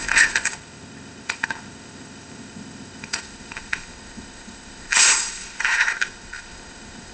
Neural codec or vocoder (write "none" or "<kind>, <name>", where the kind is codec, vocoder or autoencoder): codec, ZipCodec